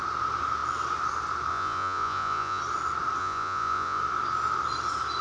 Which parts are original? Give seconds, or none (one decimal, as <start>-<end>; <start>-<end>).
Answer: 0.0-1.5; 2.6-3.2; 4.0-5.2